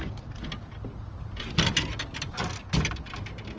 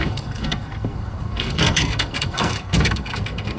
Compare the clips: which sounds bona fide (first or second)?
first